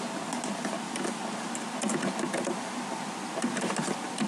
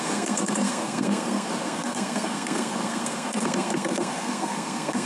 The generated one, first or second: second